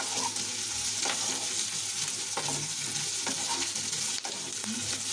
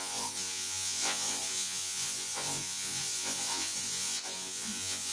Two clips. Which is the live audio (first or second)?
first